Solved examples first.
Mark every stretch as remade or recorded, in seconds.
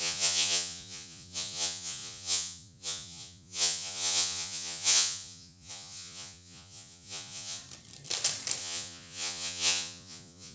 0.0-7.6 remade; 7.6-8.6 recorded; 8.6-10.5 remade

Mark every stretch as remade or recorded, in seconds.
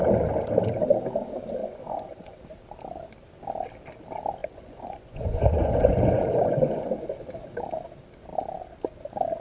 0.0-1.6 recorded; 1.6-2.4 remade; 2.4-4.4 recorded; 4.4-6.9 remade; 6.9-9.4 recorded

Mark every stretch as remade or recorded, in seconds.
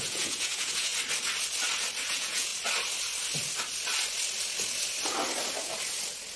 0.0-0.9 remade; 0.9-2.0 recorded; 2.0-2.5 remade; 2.5-6.4 recorded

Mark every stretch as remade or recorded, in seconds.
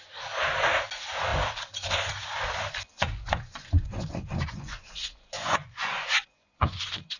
0.0-2.9 recorded; 2.9-7.2 remade